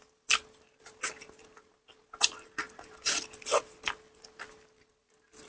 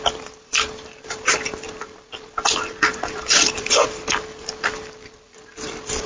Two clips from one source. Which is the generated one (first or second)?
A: second